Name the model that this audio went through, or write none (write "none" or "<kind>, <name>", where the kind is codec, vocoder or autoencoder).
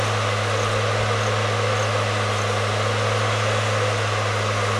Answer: none